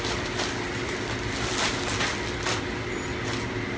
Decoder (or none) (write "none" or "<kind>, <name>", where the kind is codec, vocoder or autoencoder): none